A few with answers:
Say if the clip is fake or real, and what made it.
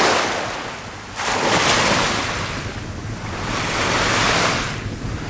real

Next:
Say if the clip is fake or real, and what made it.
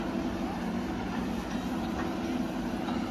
real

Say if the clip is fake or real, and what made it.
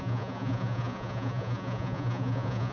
fake, vocoder, Vocos